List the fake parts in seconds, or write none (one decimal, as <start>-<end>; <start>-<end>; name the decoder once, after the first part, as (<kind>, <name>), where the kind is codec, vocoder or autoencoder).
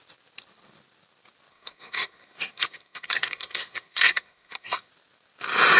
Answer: 1.5-4.9 (codec, SNAC)